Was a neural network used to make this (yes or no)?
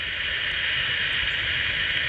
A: no